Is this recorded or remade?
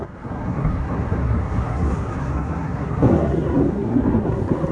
remade